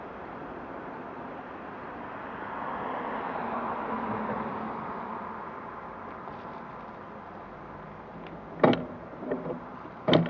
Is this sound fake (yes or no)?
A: no